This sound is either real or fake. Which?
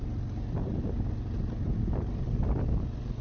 real